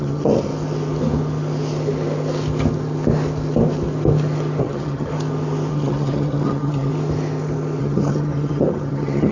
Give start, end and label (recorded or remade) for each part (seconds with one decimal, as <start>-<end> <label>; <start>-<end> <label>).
0.0-0.5 remade; 0.5-4.6 recorded; 4.6-5.1 remade; 5.1-5.7 recorded; 5.7-6.9 remade; 6.9-7.8 recorded; 7.8-9.3 remade